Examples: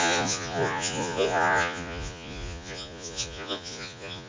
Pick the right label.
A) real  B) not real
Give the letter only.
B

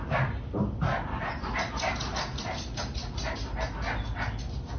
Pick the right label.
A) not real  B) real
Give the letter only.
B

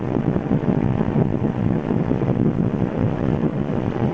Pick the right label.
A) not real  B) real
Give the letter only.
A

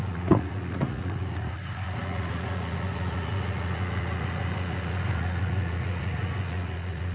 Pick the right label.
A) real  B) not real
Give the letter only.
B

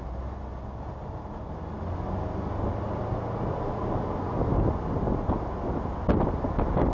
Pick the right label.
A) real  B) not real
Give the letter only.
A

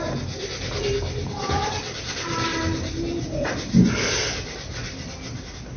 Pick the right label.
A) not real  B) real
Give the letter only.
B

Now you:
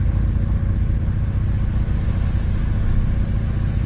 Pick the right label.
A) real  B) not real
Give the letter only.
A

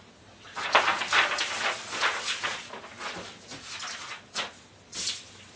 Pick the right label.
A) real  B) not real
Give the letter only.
A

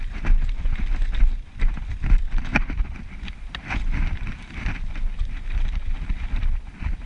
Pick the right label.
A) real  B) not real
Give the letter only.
A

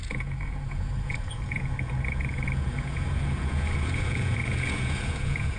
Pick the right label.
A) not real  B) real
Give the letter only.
A